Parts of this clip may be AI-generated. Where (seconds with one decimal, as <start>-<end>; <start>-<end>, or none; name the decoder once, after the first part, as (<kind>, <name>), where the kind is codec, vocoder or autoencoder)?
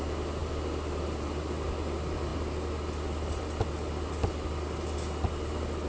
none